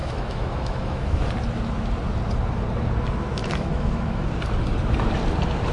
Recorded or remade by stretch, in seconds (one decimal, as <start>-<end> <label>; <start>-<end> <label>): 0.0-1.2 remade; 1.2-3.4 recorded; 3.4-4.3 remade; 4.3-5.7 recorded